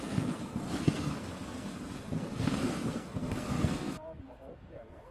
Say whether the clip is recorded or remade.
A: remade